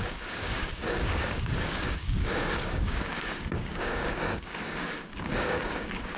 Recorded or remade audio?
remade